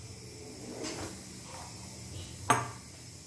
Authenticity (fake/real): real